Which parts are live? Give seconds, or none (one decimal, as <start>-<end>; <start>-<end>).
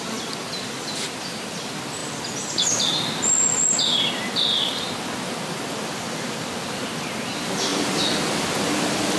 0.0-9.2